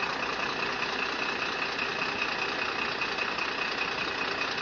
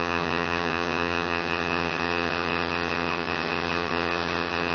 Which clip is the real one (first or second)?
first